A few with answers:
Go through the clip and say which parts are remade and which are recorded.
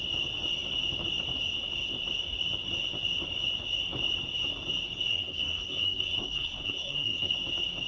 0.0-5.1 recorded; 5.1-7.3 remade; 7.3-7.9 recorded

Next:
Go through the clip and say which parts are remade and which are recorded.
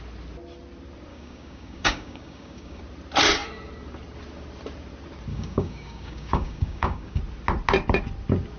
0.0-1.1 recorded; 1.1-2.8 remade; 2.8-5.3 recorded; 5.3-7.2 remade; 7.2-8.6 recorded